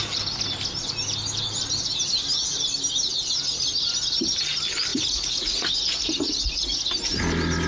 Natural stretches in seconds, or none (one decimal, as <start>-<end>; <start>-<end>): 0.0-4.9; 6.8-7.7